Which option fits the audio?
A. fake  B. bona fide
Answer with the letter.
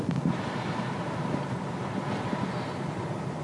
B